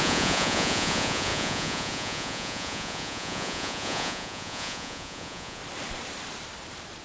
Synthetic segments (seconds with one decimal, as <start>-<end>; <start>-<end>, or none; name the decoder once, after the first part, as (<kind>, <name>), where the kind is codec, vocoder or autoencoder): 0.0-5.6 (vocoder, Vocos)